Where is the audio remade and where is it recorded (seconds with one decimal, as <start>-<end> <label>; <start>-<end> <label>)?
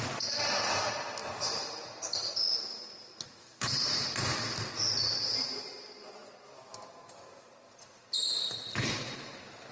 0.0-1.2 recorded; 1.2-2.1 remade; 2.1-9.7 recorded